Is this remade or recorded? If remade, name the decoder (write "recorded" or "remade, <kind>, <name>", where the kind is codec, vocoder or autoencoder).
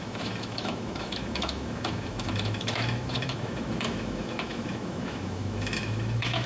remade, autoencoder, DAC-VAE